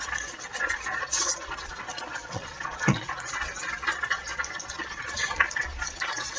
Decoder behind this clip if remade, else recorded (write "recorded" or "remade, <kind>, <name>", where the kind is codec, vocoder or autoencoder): remade, vocoder, Vocos